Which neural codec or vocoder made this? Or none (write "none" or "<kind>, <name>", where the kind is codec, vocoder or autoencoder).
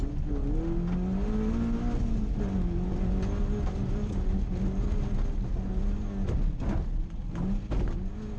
none